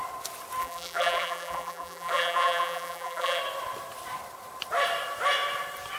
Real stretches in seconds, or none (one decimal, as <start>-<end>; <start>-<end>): 0.0-0.6; 3.4-6.0

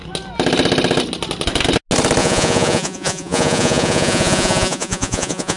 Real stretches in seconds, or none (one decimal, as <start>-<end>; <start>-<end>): 0.0-2.2

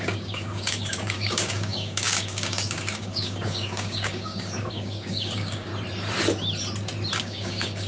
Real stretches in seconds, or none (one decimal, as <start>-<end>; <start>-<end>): 5.7-7.2

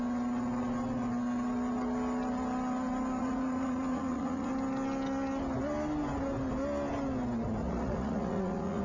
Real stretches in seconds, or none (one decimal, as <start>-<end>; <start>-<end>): 0.0-3.2; 4.5-7.6

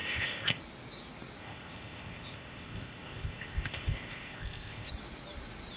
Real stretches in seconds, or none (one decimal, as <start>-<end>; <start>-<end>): 0.6-1.4; 4.9-5.8